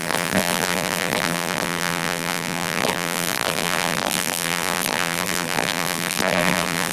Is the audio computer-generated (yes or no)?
yes